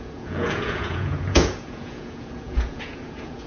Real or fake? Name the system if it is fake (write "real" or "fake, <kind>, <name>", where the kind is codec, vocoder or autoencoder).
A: fake, vocoder, Vocos